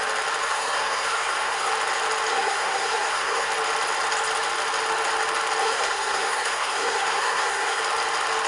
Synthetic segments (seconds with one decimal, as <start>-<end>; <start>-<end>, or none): 0.4-1.7; 2.3-3.5; 5.6-7.8